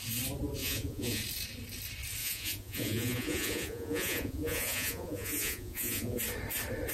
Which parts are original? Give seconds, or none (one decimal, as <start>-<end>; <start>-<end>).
0.0-0.6; 1.2-2.2; 6.2-6.9